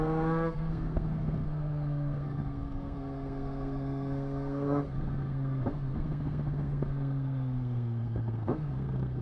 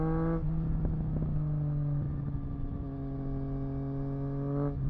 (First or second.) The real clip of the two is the second